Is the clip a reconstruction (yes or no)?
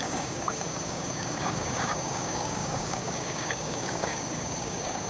yes